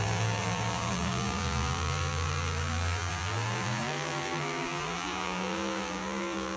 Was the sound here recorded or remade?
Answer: remade